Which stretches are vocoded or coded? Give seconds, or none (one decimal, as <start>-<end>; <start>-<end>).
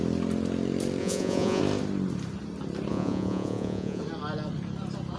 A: 1.0-1.6; 2.9-4.0